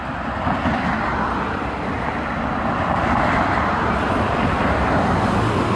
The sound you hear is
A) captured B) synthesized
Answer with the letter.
A